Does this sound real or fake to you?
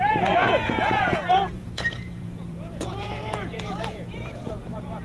fake